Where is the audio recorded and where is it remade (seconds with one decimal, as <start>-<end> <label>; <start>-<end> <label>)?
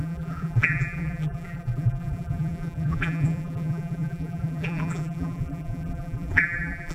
0.0-6.9 remade